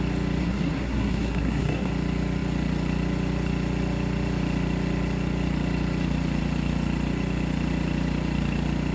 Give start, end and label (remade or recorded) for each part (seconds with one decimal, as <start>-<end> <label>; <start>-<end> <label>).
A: 0.0-0.4 recorded; 0.4-1.9 remade; 1.9-8.9 recorded

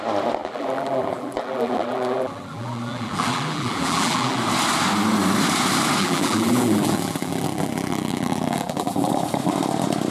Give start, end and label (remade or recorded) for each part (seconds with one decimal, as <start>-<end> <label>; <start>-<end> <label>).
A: 0.0-0.4 recorded; 0.4-4.4 remade; 4.4-6.0 recorded; 6.0-9.1 remade; 9.1-10.1 recorded

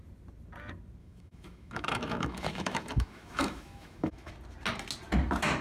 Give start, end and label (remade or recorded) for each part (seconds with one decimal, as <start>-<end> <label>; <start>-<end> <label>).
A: 0.0-1.0 recorded; 1.0-4.3 remade; 4.3-5.6 recorded

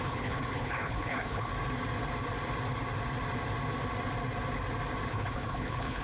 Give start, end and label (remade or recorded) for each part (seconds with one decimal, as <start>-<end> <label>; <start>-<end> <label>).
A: 0.0-1.5 remade; 1.5-5.1 recorded; 5.1-6.0 remade

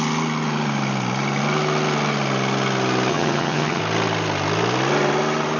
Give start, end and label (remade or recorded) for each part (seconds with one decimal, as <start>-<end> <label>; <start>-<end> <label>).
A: 0.0-3.1 recorded; 3.1-3.8 remade; 3.8-5.6 recorded

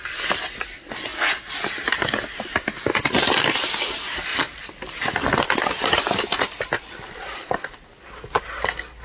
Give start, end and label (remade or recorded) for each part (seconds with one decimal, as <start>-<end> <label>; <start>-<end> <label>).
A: 0.0-9.0 recorded

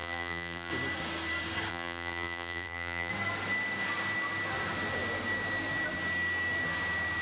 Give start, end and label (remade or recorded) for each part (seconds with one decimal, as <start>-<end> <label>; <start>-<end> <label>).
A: 0.0-0.7 remade; 0.7-1.7 recorded; 1.7-3.1 remade; 3.1-7.2 recorded